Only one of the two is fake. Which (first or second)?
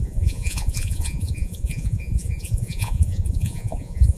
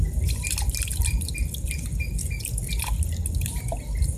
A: first